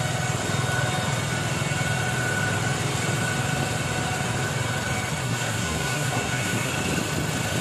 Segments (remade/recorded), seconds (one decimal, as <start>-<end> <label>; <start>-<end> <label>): 0.0-5.2 recorded; 5.2-6.7 remade; 6.7-7.6 recorded